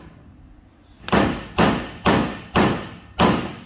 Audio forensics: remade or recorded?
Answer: recorded